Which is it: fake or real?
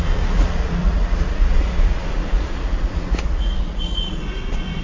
fake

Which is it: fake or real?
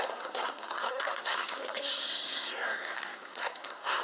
fake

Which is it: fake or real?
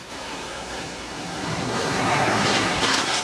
fake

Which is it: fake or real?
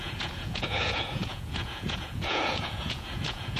fake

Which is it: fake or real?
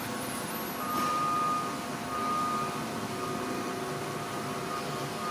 real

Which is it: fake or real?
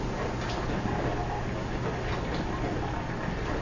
real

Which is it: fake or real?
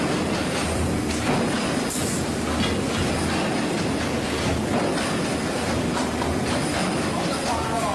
real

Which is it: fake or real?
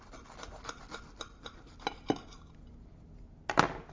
real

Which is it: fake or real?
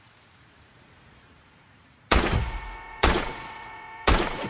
fake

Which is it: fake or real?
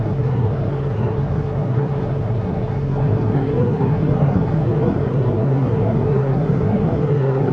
fake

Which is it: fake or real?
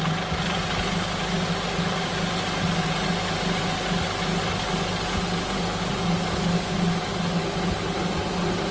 real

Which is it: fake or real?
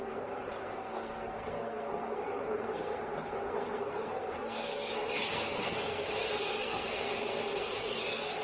fake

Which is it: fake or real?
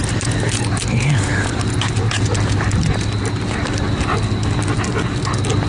real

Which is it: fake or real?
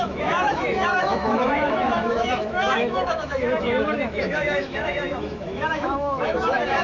fake